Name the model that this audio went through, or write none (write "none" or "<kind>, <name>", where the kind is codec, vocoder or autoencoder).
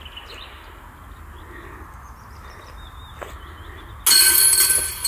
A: none